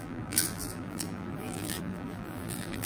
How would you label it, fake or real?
fake